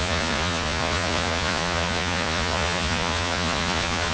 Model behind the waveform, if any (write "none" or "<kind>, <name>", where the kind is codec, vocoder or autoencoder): vocoder, Vocos